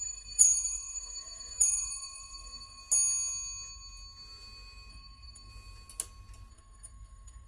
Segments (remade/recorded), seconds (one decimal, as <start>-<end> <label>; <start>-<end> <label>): 0.0-2.8 remade; 2.8-4.9 recorded; 4.9-5.5 remade; 5.5-6.5 recorded; 6.5-7.5 remade